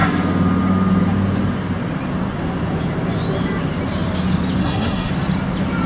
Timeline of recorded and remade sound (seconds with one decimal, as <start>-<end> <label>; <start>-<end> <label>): 0.0-4.6 recorded; 4.6-5.1 remade; 5.1-5.9 recorded